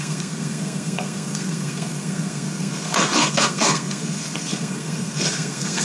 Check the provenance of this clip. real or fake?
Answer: fake